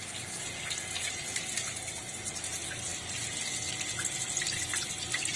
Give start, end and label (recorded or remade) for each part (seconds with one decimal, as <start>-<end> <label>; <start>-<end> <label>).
0.0-5.4 recorded